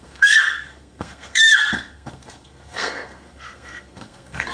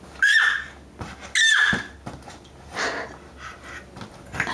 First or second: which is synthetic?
first